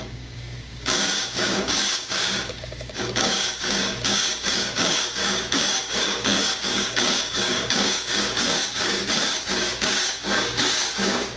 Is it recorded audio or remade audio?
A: remade